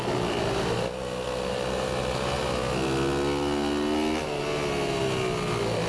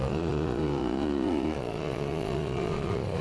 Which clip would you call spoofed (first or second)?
second